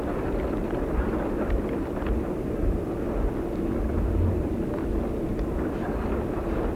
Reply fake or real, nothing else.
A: real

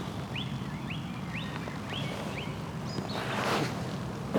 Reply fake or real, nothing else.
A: real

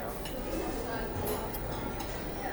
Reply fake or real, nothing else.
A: real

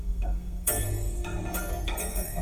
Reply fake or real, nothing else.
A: fake